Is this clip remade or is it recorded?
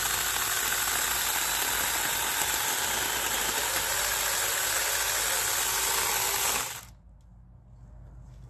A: recorded